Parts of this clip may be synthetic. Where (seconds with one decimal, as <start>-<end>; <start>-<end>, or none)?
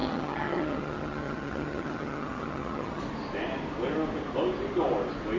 0.0-3.0